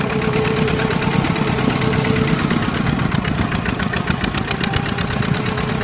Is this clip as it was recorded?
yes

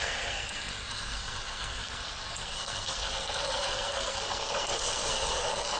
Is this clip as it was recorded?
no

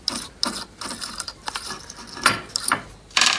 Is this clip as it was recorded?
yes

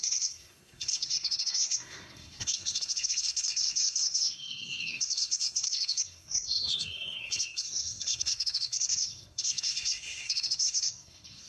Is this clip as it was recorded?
no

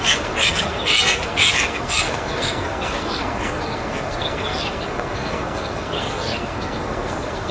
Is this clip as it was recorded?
no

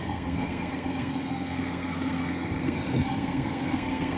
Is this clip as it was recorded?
no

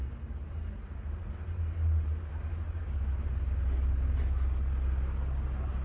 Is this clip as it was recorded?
yes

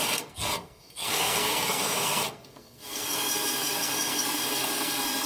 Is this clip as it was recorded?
no